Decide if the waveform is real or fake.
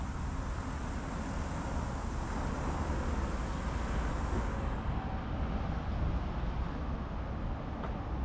real